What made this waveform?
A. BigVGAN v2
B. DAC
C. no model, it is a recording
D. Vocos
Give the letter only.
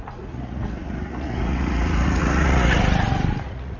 D